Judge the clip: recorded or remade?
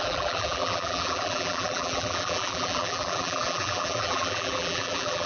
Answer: remade